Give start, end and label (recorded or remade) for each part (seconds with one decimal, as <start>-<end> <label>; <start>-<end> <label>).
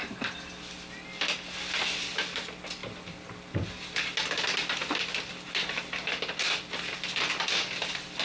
0.0-8.2 recorded